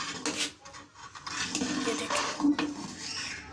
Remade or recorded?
recorded